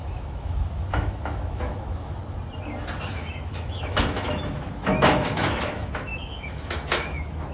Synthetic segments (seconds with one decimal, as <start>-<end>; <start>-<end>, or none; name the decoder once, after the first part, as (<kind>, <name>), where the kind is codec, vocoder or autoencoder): 0.0-2.2 (autoencoder, DAC-VAE); 3.2-7.5